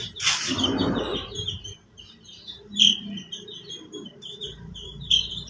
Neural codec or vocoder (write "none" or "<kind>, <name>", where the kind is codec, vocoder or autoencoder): vocoder, BigVGAN v2